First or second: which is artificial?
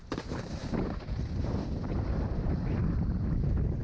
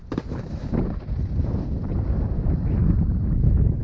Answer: first